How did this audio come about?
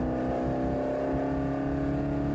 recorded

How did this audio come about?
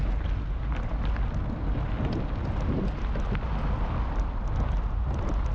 recorded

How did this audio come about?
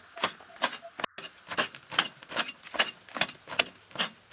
recorded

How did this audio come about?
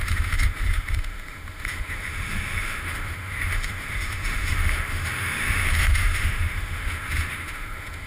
remade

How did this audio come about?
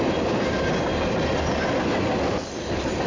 recorded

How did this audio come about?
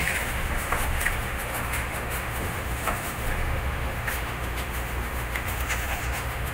remade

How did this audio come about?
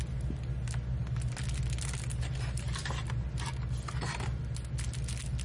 recorded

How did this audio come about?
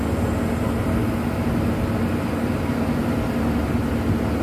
recorded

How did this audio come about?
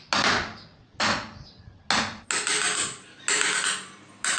recorded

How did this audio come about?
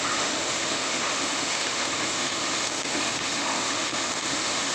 remade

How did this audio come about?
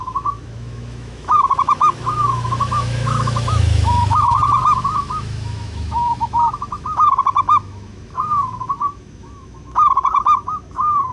remade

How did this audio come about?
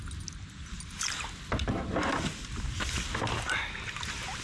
recorded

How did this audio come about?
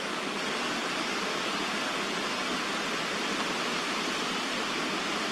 recorded